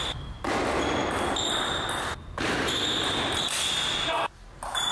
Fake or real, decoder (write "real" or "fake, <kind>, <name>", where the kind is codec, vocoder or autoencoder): real